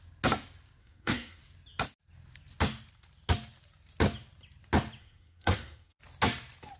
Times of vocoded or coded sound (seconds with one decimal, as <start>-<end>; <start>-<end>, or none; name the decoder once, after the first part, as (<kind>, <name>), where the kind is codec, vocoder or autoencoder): 0.8-1.4 (codec, SNAC); 5.0-6.0